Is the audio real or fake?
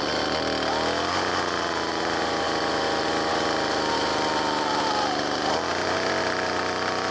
real